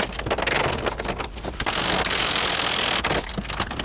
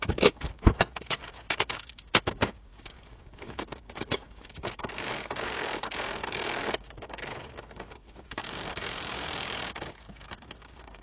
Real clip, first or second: first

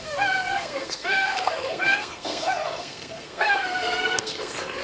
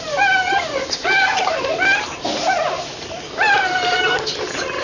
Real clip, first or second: second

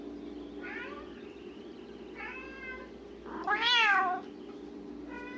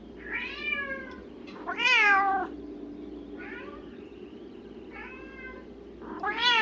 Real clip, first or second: first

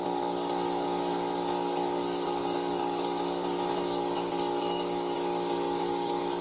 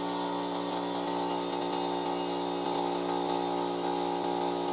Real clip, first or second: second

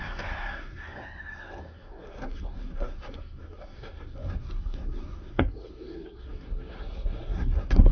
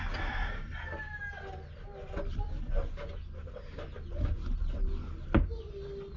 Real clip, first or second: second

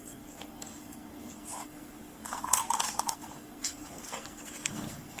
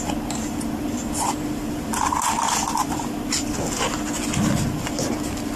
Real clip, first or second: second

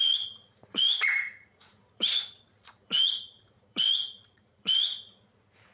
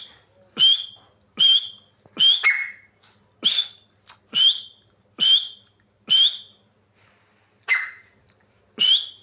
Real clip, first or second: second